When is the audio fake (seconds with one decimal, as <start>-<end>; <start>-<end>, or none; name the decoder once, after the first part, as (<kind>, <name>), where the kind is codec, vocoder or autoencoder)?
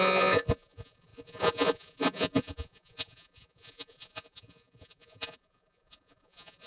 0.0-6.7 (vocoder, Vocos)